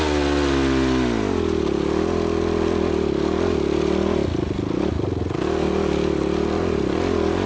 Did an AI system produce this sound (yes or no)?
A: no